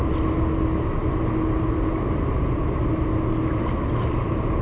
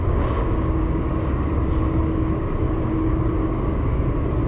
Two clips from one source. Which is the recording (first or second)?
first